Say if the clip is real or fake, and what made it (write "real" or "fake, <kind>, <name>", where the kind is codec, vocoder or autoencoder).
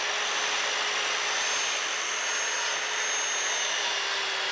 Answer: real